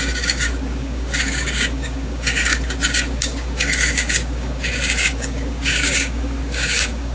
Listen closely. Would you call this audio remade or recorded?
remade